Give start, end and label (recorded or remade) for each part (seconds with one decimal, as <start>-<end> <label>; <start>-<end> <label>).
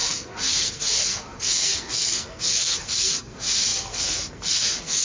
0.0-5.0 remade